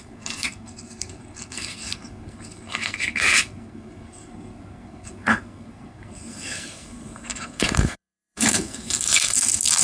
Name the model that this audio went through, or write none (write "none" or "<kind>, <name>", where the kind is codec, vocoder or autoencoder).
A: codec, SNAC